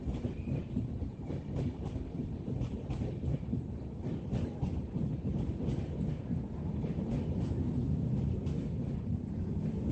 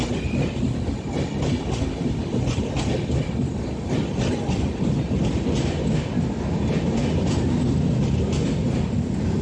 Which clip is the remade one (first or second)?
first